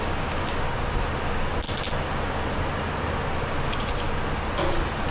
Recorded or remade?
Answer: recorded